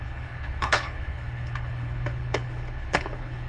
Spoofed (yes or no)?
yes